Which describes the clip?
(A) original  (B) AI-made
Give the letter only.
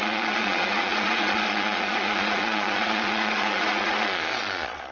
B